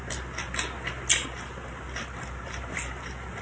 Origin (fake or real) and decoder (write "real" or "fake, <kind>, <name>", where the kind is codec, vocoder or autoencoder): real